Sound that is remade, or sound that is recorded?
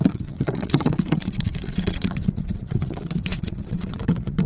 remade